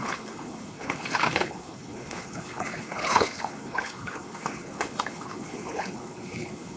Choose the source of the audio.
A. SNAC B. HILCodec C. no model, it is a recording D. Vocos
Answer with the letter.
B